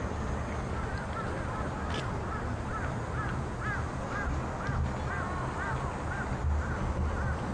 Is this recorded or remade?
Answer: recorded